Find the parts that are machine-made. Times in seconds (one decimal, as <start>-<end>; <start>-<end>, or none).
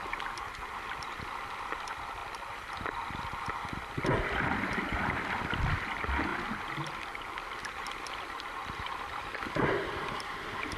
none